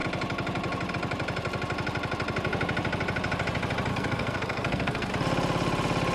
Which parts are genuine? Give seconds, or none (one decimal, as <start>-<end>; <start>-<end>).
0.0-3.9; 5.1-6.1